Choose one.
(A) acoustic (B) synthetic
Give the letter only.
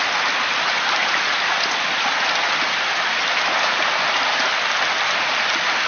A